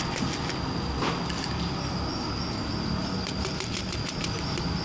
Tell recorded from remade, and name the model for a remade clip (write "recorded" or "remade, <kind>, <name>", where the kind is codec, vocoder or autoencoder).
recorded